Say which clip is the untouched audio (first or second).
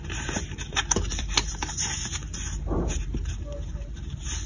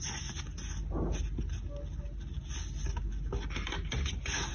second